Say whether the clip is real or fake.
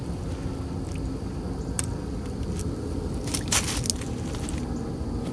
real